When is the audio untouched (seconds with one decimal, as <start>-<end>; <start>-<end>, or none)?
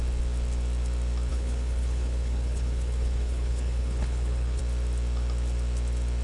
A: 0.0-1.3; 4.6-6.2